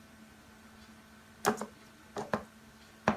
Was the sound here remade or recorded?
recorded